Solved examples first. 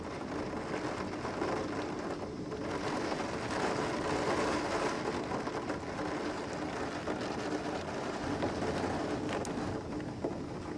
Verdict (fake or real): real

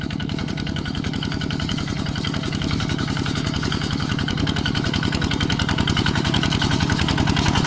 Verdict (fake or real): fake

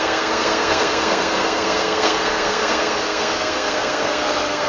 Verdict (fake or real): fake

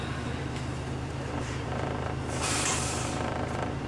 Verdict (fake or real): fake